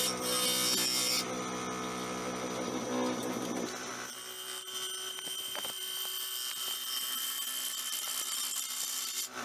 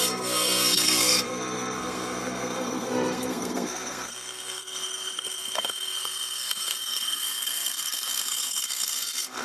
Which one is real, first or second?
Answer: first